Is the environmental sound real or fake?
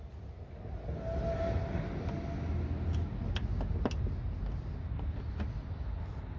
real